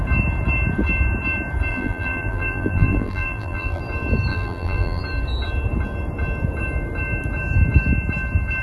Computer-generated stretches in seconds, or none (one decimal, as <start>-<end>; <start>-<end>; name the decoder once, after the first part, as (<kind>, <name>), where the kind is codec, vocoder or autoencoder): 1.7-3.8 (vocoder, BigVGAN v2); 4.3-5.0